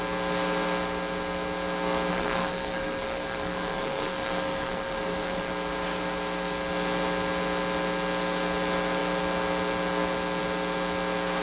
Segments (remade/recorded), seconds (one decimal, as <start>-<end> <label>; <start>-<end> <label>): 0.0-2.1 recorded; 2.1-5.5 remade; 5.5-11.4 recorded